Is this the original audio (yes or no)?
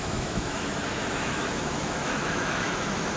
no